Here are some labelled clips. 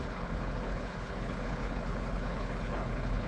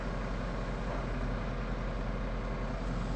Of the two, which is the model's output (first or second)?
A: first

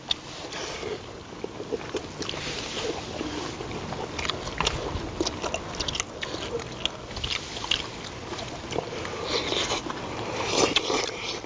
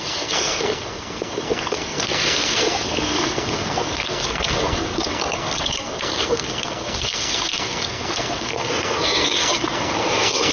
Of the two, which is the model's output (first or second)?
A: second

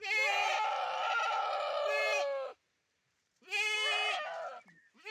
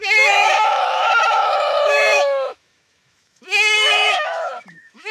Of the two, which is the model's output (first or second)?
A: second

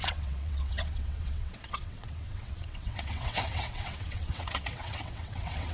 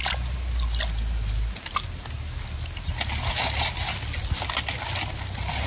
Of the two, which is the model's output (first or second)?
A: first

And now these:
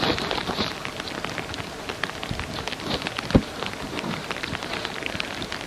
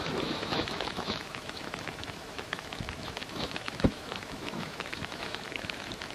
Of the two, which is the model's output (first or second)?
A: second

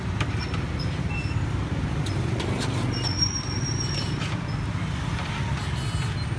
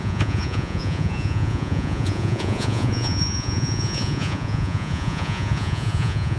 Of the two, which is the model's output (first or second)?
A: second